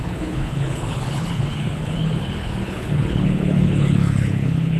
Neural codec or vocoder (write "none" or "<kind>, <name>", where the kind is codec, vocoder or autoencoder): codec, HILCodec